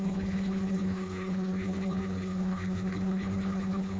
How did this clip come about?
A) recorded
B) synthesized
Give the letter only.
B